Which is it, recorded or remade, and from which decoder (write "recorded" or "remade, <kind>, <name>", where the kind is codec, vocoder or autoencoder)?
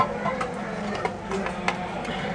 recorded